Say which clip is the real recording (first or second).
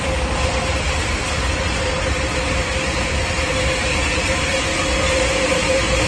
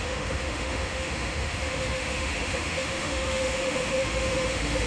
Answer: first